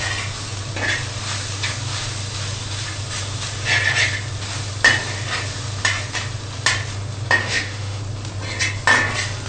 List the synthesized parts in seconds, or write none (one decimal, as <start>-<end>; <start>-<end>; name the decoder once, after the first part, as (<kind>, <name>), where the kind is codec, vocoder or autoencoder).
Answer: 7.4-8.0 (autoencoder, DAC-VAE)